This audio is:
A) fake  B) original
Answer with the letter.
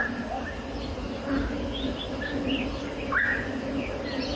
B